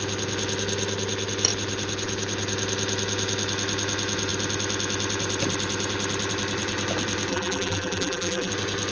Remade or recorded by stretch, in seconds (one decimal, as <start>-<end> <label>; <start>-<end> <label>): 0.0-7.3 recorded; 7.3-8.5 remade; 8.5-8.9 recorded